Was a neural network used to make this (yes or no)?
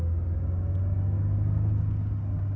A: no